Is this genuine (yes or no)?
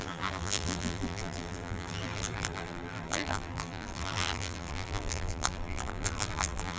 no